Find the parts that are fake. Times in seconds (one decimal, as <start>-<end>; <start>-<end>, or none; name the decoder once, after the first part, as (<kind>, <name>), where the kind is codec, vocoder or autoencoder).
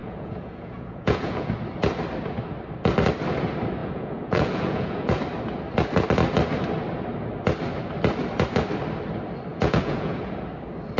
0.0-1.5 (vocoder, Vocos); 3.8-5.2; 9.5-10.5